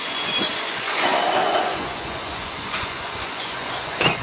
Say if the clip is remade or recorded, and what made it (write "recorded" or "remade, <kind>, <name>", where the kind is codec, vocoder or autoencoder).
remade, vocoder, Vocos